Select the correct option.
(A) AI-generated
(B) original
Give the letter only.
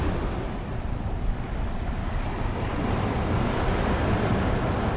B